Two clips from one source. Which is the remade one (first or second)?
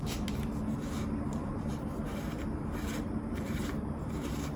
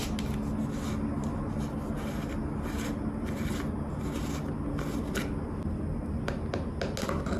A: first